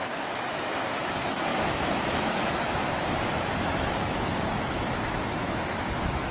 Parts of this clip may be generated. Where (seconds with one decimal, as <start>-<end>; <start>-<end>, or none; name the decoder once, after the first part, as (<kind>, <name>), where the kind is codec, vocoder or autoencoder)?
0.0-6.3 (autoencoder, DAC-VAE)